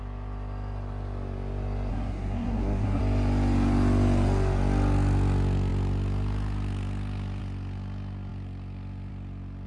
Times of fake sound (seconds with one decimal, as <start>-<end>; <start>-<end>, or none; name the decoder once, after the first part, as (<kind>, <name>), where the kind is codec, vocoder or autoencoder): 1.9-3.0 (codec, SNAC)